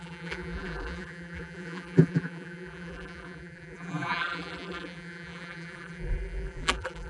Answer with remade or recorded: remade